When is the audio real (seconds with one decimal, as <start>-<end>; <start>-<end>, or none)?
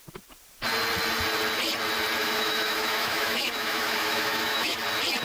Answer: 0.0-2.2; 4.8-5.2